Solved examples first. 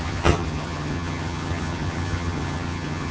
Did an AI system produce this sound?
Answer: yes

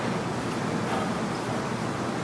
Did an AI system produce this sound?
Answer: no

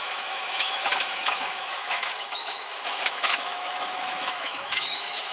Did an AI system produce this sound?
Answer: yes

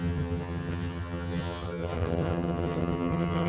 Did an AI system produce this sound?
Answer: yes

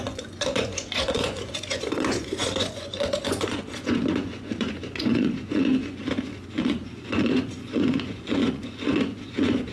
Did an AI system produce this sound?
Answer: yes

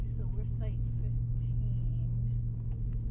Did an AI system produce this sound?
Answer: no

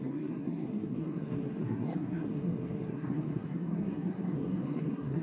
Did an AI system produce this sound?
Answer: yes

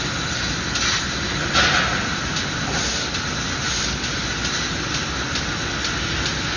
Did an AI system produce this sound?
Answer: no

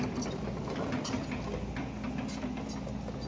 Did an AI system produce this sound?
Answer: no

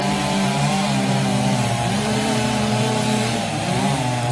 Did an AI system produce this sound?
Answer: yes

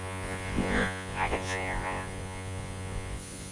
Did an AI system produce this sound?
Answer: yes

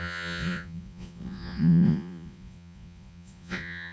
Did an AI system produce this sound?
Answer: yes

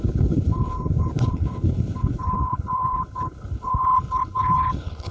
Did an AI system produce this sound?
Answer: yes